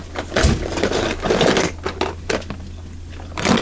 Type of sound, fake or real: real